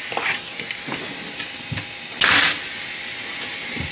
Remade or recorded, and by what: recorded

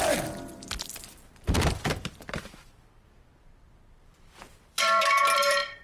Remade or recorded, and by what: remade, vocoder, BigVGAN v2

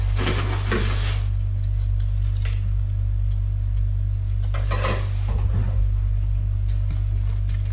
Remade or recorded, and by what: recorded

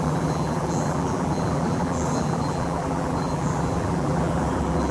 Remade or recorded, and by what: remade, vocoder, BigVGAN v2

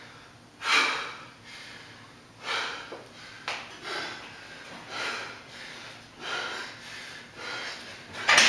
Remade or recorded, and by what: recorded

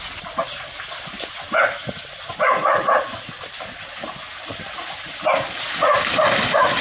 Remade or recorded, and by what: recorded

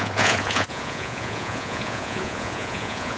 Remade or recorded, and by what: remade, vocoder, Vocos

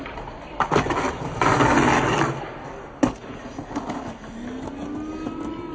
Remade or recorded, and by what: recorded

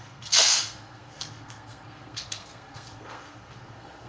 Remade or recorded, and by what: remade, codec, SNAC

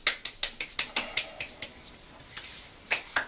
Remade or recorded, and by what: recorded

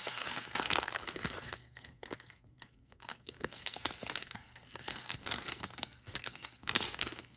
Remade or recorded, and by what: remade, codec, SNAC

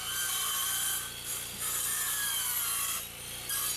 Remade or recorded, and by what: remade, vocoder, BigVGAN v2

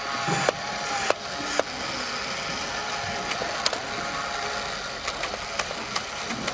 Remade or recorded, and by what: recorded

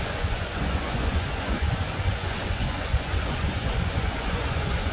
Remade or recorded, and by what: remade, vocoder, Vocos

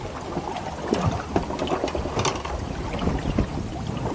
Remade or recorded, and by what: recorded